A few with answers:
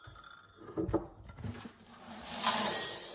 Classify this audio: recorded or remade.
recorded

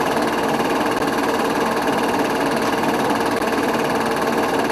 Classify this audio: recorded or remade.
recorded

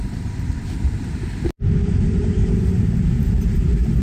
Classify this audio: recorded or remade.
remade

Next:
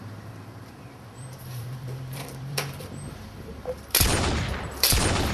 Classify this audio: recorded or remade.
remade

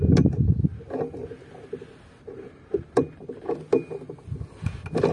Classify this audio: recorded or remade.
recorded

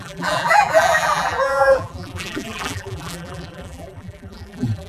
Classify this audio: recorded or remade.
remade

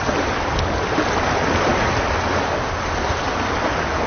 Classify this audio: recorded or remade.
recorded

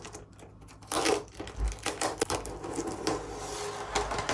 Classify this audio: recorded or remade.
recorded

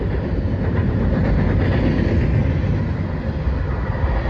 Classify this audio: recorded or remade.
recorded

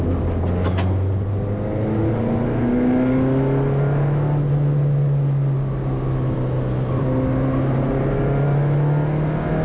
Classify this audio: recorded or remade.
recorded